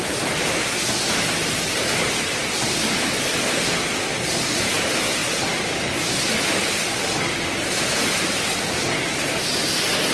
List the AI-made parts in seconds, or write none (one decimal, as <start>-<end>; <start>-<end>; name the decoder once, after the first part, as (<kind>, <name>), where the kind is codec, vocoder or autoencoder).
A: none